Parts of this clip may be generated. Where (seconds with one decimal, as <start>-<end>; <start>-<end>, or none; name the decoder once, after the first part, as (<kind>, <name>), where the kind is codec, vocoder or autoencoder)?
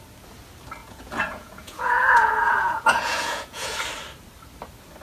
0.8-3.8 (vocoder, Vocos)